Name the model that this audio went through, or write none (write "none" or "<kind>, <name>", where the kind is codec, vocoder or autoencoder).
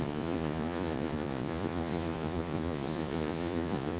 vocoder, Vocos